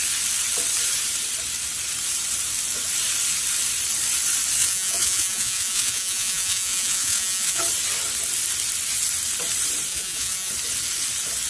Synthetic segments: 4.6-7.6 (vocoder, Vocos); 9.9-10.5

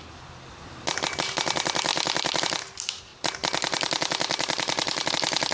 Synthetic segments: none

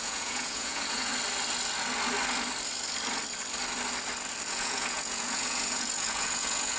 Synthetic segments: 0.0-1.1 (vocoder, Vocos); 4.5-6.8

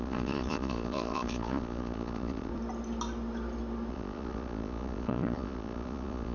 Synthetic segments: 0.0-2.5 (vocoder, Vocos); 3.9-6.3

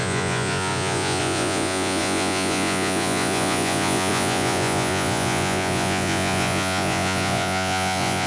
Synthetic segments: 0.0-8.3 (vocoder, Vocos)

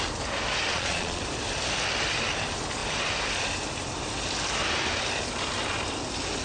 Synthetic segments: 0.7-1.2 (vocoder, Vocos)